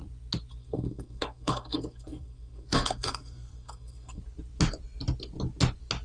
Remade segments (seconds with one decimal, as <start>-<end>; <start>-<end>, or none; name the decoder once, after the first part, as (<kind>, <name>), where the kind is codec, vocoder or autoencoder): 0.6-4.2 (codec, SNAC)